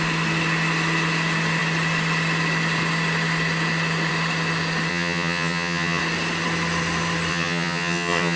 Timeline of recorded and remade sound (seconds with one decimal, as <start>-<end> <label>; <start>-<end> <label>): 0.0-4.9 recorded; 4.9-6.0 remade; 6.0-7.3 recorded; 7.3-8.4 remade